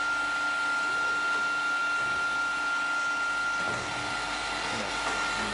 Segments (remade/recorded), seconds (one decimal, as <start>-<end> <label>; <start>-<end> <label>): 0.0-5.5 recorded